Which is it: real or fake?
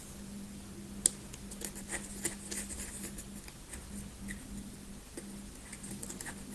real